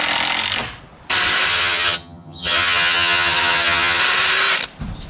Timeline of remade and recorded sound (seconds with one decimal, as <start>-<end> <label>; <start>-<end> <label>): 0.0-1.5 recorded; 1.5-4.0 remade; 4.0-5.1 recorded